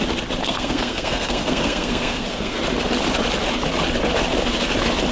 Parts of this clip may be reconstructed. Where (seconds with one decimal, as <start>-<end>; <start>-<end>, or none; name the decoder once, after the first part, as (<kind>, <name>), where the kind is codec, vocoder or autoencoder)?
0.4-2.6 (codec, SNAC)